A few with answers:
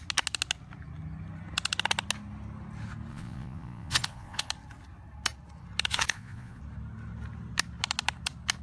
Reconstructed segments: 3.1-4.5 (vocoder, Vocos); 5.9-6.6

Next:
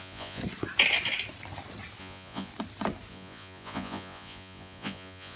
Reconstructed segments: 0.0-0.4 (vocoder, Vocos); 2.0-2.5; 3.1-5.4

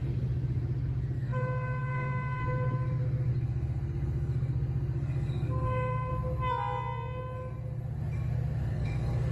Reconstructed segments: 1.2-2.4 (codec, SNAC); 3.3-6.1; 8.6-9.3

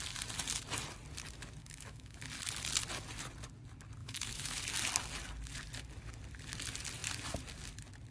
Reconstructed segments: 1.6-2.2 (autoencoder, DAC-VAE); 4.0-4.6

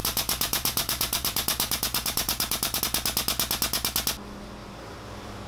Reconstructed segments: 0.0-2.8 (vocoder, BigVGAN v2); 4.6-5.5

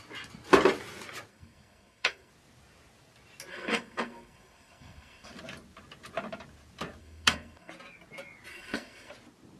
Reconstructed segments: 1.3-2.3 (codec, SNAC); 3.5-5.3; 7.0-7.7; 8.5-9.1